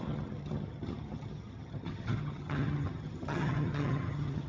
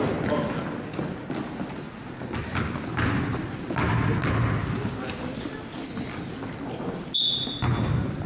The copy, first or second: first